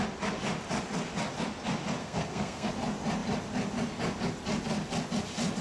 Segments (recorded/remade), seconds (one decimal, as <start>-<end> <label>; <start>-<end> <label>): 0.0-2.0 recorded; 2.0-2.7 remade; 2.7-5.6 recorded